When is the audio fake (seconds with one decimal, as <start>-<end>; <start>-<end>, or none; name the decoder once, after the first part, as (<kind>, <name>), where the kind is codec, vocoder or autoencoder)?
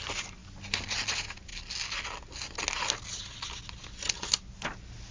0.0-0.4 (vocoder, BigVGAN v2); 1.1-1.5; 4.6-5.1